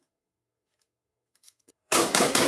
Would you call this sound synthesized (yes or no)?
yes